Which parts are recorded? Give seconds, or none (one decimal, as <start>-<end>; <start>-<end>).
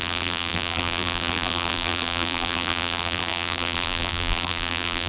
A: none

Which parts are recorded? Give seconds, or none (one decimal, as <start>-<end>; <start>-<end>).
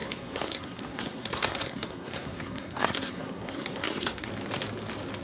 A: 4.3-5.2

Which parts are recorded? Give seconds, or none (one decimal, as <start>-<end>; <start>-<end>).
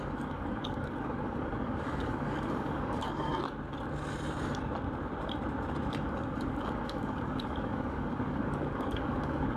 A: 3.3-5.9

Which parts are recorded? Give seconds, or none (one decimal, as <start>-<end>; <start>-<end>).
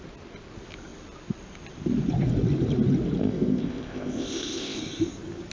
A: 0.0-3.2; 4.8-5.5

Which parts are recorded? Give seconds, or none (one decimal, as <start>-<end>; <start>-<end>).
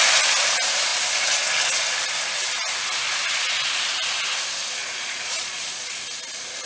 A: 0.0-4.8; 6.0-6.7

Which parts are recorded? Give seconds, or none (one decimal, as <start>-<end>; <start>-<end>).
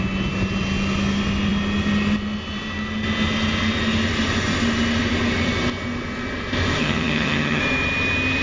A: 0.0-6.8; 7.6-8.4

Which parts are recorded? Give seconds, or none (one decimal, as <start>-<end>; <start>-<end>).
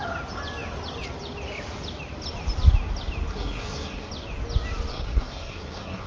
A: 0.0-3.3; 4.1-4.9